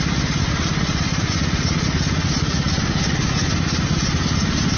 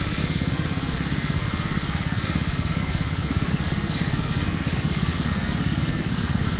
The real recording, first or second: first